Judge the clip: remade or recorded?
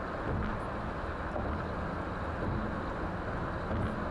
recorded